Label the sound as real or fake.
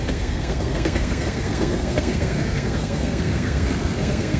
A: fake